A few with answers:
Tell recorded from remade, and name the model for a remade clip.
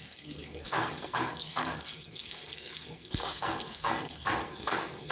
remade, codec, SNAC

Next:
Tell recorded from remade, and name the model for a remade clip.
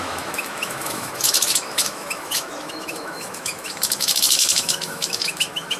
remade, autoencoder, DAC-VAE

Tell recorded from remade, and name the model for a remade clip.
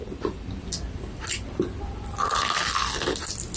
recorded